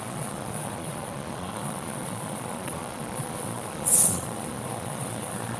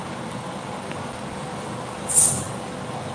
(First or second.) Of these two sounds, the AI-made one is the first